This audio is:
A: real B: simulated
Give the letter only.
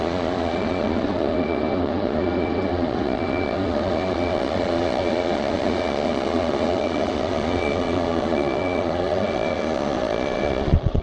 B